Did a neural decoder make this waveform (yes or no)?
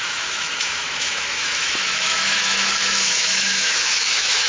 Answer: yes